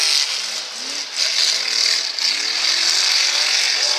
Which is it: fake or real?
real